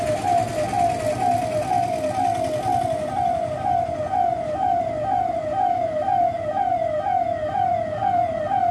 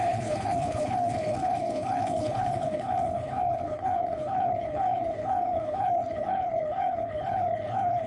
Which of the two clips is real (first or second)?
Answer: first